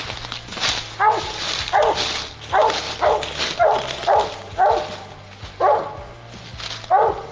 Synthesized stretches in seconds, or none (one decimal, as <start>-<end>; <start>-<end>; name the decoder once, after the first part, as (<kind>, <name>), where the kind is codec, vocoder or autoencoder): none